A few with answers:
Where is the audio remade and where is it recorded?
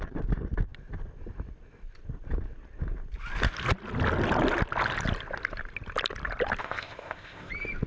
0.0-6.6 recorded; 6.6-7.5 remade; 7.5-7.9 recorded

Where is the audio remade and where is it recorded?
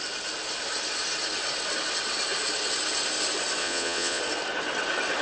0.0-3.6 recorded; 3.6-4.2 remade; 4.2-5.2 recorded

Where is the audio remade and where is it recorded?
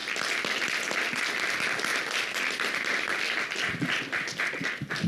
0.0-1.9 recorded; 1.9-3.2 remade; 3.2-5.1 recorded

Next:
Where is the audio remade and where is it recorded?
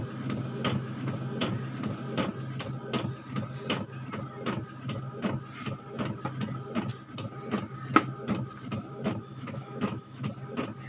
0.0-9.3 recorded; 9.3-10.3 remade; 10.3-10.9 recorded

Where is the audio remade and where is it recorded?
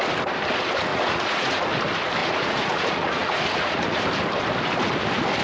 0.0-0.9 recorded; 0.9-1.6 remade; 1.6-2.2 recorded; 2.2-4.0 remade; 4.0-5.4 recorded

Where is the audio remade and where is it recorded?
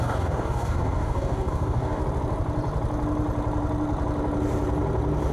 0.0-2.0 remade; 2.0-5.3 recorded